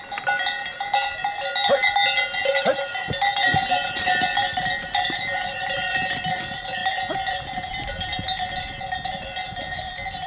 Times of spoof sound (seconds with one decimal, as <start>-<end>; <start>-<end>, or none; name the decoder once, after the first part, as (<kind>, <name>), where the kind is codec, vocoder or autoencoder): none